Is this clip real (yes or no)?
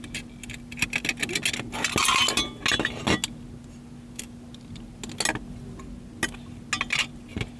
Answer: yes